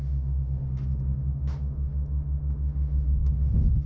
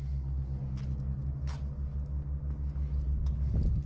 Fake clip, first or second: first